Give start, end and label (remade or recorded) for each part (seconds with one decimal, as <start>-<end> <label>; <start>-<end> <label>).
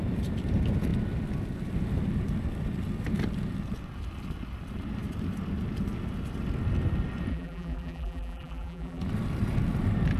0.0-7.3 recorded; 7.3-9.0 remade; 9.0-10.2 recorded